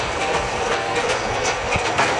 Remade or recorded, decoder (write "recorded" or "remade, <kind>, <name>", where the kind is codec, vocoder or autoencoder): remade, codec, SNAC